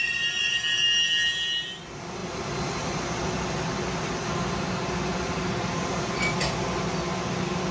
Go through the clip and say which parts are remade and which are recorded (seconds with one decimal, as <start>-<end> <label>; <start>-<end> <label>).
0.0-7.7 recorded